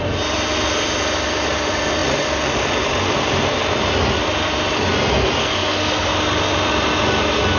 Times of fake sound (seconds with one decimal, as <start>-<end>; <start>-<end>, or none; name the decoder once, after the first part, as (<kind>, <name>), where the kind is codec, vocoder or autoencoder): 5.4-6.1 (codec, SNAC)